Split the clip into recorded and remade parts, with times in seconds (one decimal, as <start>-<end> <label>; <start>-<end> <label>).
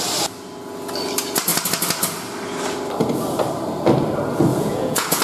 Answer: 0.0-4.5 recorded; 4.5-5.2 remade